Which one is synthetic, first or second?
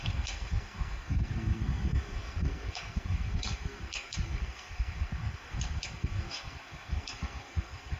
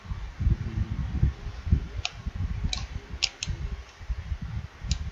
first